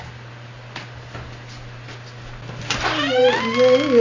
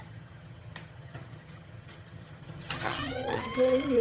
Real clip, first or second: first